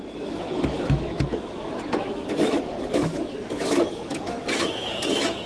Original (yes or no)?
no